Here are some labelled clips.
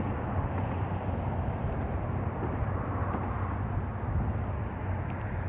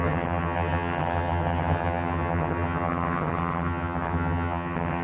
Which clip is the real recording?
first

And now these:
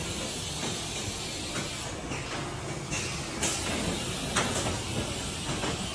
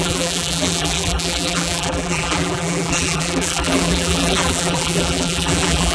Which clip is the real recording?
first